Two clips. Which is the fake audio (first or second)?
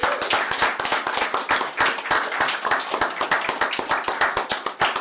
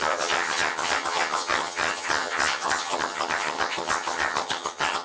second